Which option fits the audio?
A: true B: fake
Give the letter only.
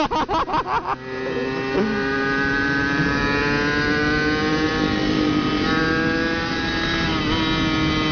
A